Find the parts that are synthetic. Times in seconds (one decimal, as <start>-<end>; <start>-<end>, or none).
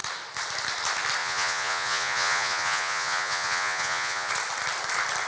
1.2-4.3